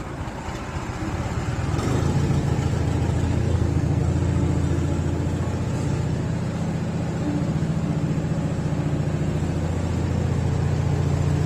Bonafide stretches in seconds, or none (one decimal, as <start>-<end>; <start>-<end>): 0.0-3.4; 4.0-11.5